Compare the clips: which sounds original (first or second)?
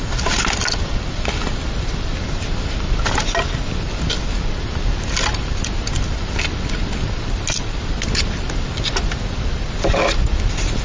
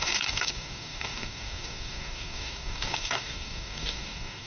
first